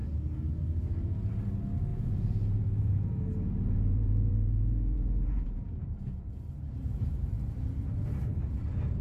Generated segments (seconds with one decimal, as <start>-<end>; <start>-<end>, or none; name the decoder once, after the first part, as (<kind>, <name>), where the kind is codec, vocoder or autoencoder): 1.9-6.4 (vocoder, Vocos)